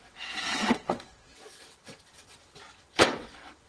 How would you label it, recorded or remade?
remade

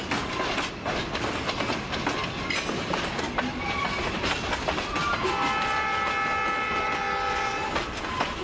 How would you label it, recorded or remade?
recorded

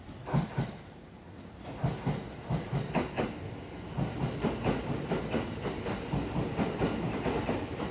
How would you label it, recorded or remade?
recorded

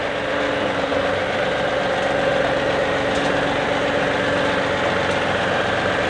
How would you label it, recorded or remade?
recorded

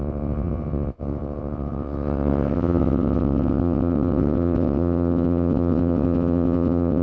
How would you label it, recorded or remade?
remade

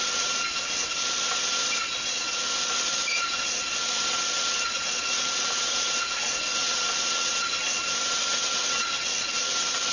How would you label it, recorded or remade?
remade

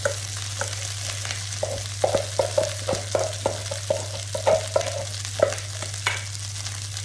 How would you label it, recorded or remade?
recorded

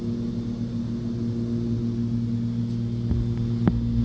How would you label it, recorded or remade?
recorded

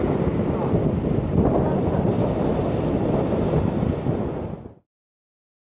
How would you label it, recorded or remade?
recorded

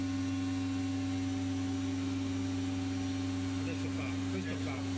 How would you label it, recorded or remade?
recorded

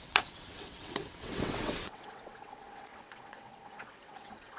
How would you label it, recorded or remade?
remade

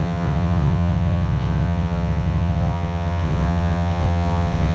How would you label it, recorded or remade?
remade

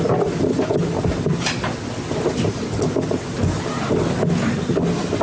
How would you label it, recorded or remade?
recorded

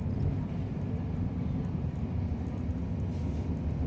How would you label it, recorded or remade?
recorded